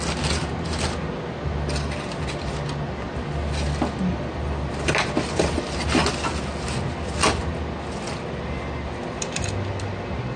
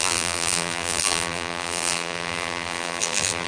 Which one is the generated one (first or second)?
second